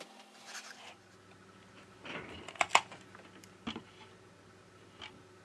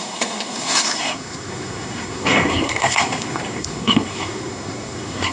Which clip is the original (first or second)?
first